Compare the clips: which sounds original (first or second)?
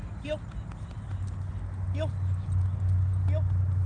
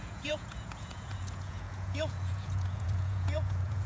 first